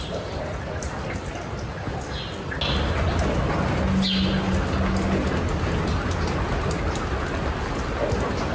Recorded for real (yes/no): yes